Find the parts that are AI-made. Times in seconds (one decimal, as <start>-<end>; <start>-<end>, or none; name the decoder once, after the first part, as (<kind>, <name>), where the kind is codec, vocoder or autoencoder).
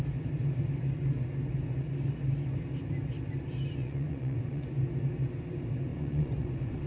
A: 3.8-4.7 (vocoder, Vocos); 5.9-6.9